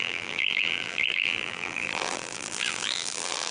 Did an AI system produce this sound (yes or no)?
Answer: yes